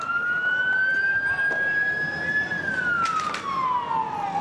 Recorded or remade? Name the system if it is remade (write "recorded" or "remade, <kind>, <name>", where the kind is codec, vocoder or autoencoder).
recorded